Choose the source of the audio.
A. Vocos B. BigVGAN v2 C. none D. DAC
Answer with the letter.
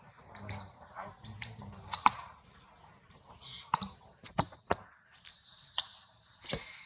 B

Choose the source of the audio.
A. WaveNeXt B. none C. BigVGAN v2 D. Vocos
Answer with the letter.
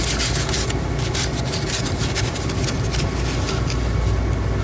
B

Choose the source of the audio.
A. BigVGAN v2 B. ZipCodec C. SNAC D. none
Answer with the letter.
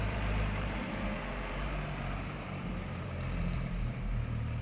A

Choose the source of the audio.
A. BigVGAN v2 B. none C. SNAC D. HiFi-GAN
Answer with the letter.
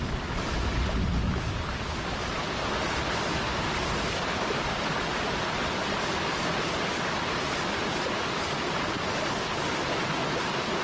B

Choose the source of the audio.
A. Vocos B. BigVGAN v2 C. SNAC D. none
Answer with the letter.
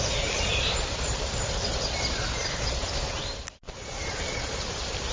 D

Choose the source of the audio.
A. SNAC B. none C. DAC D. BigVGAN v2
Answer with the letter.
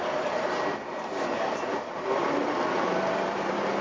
D